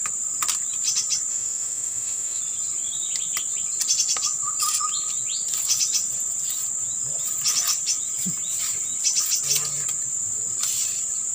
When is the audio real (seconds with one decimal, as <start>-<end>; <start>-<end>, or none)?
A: 0.0-1.3; 2.4-11.3